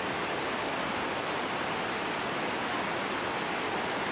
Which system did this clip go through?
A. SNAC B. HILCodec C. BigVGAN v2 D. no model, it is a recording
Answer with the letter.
D